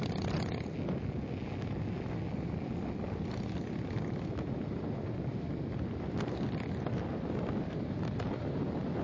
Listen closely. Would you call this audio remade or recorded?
recorded